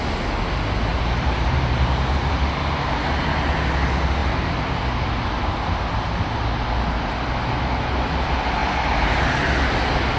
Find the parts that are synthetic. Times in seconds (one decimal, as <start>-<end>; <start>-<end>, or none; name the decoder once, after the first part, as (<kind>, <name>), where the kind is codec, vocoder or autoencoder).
0.9-2.4 (vocoder, BigVGAN v2)